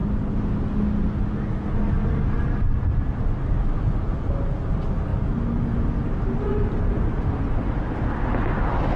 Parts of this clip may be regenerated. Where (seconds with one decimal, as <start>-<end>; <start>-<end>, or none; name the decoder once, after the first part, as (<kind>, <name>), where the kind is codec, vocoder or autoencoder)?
none